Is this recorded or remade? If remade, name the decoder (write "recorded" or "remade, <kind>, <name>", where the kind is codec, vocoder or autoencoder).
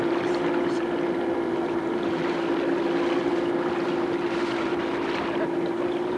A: recorded